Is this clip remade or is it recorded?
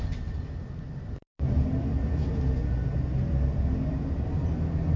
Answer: recorded